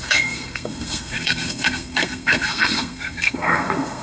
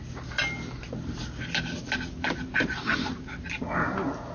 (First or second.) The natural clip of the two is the second